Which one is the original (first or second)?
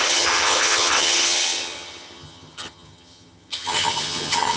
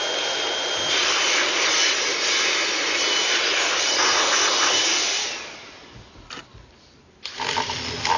second